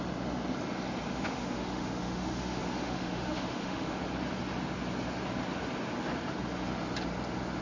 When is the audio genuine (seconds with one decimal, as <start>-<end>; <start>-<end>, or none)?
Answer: 0.0-1.1; 4.0-7.6